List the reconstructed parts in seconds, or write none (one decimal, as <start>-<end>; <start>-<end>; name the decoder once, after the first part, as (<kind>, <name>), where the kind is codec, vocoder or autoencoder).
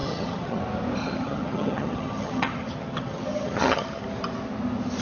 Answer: 0.0-0.6 (vocoder, HiFi-GAN); 1.0-4.0